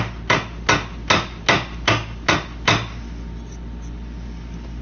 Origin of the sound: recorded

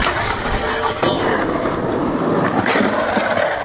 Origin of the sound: remade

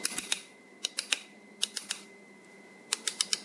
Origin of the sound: remade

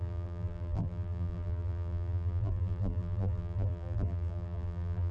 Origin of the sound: remade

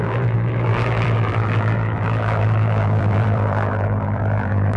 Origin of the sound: remade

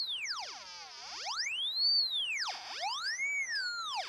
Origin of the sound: recorded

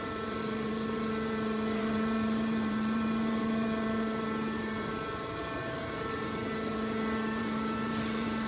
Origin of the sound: remade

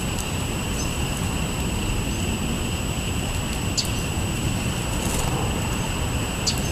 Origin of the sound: recorded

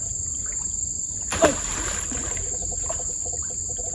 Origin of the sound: remade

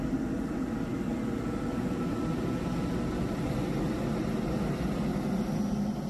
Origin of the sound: recorded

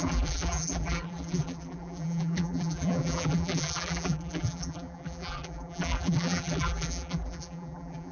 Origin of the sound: remade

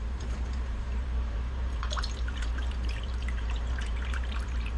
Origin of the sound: remade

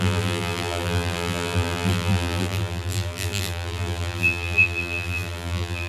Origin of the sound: remade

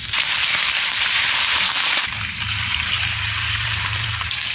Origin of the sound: remade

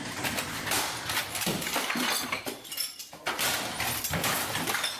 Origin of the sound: remade